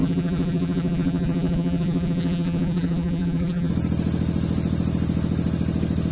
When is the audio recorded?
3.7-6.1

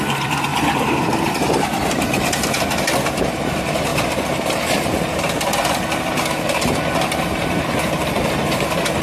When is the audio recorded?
0.5-1.1; 3.9-9.0

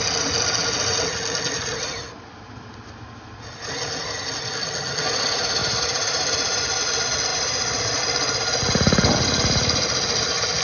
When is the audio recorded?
0.0-5.6; 6.8-7.3; 8.0-10.6

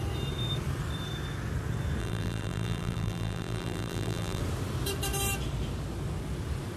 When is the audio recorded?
0.0-2.0; 4.4-6.8

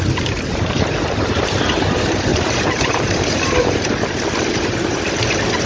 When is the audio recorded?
0.0-2.3; 3.7-5.7

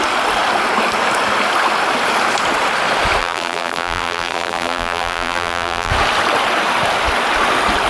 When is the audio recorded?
0.0-3.2; 5.9-7.9

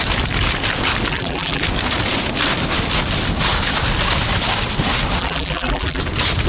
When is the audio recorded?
0.0-1.1; 1.6-5.2; 6.0-6.5